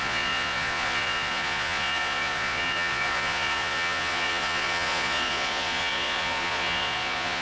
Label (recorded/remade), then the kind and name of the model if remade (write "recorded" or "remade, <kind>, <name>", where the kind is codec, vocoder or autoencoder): remade, vocoder, Vocos